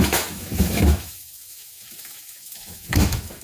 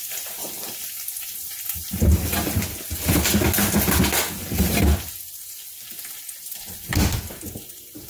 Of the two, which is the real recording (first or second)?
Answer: second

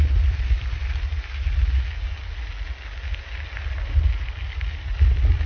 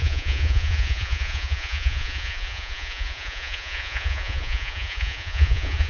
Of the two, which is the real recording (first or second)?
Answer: first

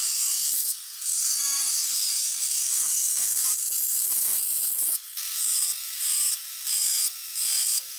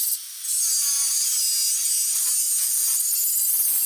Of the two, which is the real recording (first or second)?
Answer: second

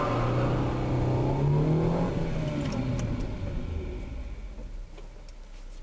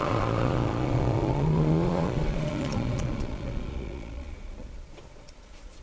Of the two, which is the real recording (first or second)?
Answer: first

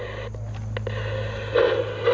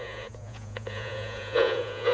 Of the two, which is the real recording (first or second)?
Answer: first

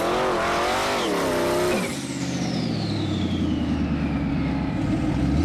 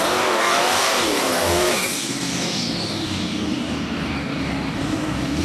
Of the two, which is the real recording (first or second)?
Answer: first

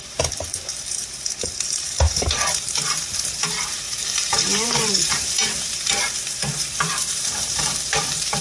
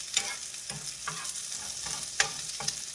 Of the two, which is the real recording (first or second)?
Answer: second